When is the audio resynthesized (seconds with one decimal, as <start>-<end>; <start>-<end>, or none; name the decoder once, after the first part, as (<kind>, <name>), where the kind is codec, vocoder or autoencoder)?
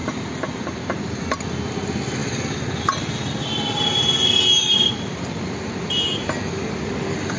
0.0-1.2 (vocoder, BigVGAN v2); 2.2-3.3; 4.6-5.6